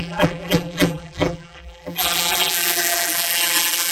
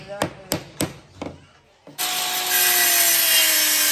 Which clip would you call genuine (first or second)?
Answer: second